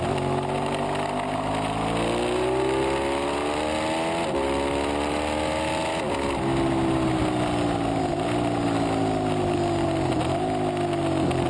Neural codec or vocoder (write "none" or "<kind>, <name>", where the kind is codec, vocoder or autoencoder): none